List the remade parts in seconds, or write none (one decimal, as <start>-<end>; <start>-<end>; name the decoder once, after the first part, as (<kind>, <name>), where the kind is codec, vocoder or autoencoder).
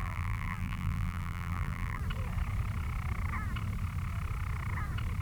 0.0-2.0 (vocoder, BigVGAN v2)